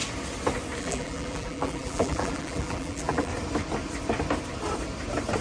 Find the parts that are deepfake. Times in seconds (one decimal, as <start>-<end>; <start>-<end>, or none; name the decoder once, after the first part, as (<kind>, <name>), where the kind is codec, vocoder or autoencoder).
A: 0.8-3.3 (vocoder, BigVGAN v2)